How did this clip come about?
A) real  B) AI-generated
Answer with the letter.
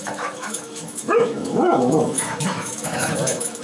B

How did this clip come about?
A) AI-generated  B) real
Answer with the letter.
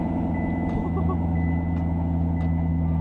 B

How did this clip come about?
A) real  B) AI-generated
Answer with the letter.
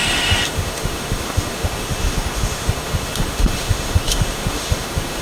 B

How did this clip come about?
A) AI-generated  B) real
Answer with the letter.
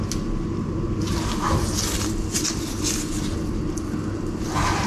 B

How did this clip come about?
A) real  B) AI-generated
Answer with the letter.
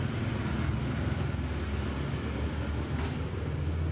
A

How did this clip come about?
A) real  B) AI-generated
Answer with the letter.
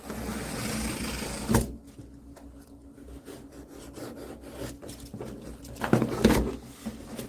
A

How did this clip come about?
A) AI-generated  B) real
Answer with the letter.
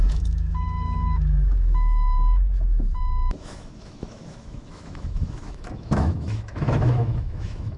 A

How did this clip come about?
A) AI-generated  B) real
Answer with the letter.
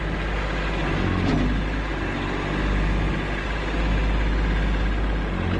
B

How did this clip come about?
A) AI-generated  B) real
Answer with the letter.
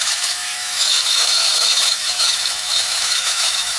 A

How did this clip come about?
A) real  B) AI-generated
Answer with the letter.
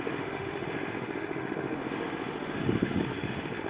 B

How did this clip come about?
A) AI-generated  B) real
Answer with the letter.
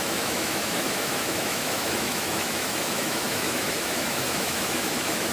A